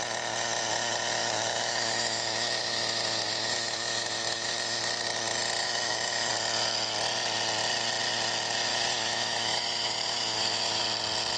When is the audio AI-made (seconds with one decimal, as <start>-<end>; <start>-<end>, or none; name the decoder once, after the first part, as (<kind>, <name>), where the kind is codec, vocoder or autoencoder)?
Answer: 1.2-4.8 (autoencoder, DAC-VAE); 5.6-6.3; 8.7-10.8